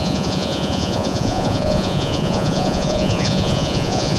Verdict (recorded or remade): remade